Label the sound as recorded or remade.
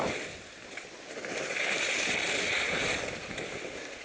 recorded